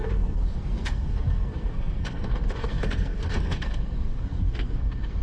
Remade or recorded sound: remade